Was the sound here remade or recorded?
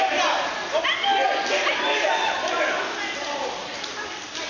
recorded